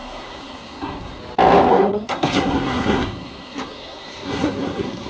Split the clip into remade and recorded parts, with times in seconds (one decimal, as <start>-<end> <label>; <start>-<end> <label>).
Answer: 0.0-1.2 remade; 1.2-1.7 recorded; 1.7-5.1 remade